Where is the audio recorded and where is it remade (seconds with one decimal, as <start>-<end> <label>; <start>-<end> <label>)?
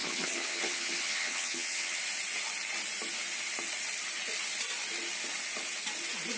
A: 0.0-2.0 remade; 2.0-6.4 recorded